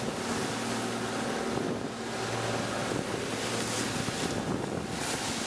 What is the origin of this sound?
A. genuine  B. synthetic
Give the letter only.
A